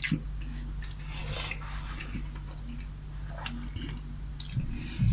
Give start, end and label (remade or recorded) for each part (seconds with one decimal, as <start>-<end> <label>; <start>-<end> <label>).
0.0-5.1 recorded